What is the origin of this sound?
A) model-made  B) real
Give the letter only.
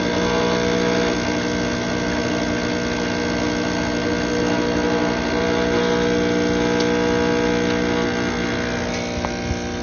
B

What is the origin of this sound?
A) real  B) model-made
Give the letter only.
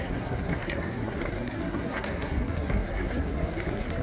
B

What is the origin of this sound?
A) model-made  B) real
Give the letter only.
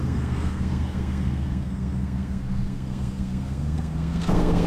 A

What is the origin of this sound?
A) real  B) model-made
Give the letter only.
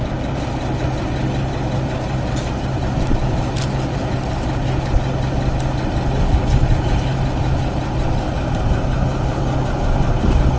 A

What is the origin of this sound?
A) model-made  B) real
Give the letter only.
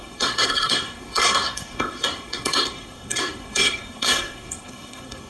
A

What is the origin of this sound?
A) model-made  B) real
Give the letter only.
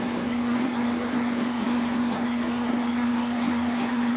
A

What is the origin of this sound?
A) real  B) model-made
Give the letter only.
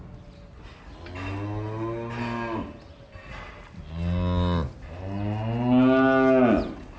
A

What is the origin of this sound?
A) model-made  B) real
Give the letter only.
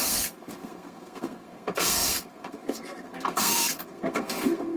A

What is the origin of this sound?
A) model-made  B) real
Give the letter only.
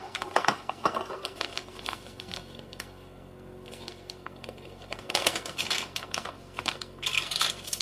A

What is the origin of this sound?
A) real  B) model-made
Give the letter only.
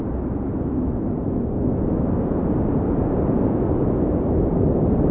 A